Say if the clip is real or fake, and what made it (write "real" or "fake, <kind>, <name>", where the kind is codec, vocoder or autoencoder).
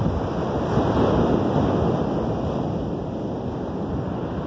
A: real